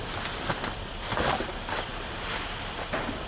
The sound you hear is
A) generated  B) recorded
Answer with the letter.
B